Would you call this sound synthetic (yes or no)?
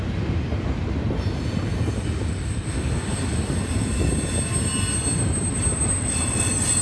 no